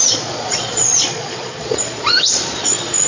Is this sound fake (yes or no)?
yes